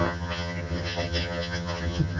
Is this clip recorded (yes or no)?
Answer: no